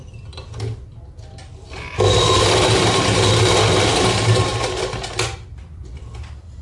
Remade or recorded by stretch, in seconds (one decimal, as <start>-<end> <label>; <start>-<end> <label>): 0.0-6.6 recorded